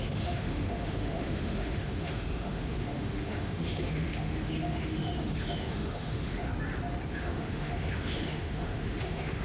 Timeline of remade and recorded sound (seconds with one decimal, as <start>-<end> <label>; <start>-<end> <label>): 0.0-6.5 remade; 6.5-7.1 recorded; 7.1-9.4 remade